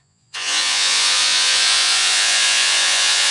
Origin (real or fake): fake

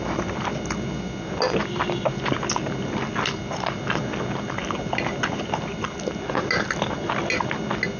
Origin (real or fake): real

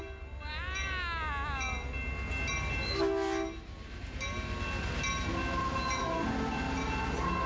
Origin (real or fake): real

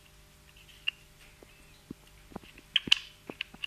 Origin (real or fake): real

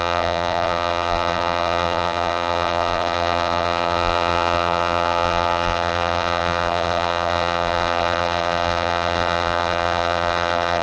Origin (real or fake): fake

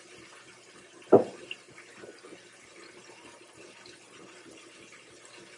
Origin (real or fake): real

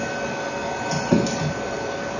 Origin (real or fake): real